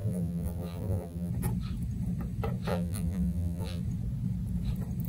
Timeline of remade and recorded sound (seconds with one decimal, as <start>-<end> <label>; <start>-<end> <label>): 0.0-1.3 remade; 1.3-2.7 recorded; 2.7-3.8 remade; 3.8-5.1 recorded